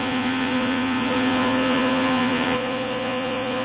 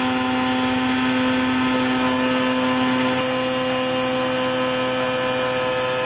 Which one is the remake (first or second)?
first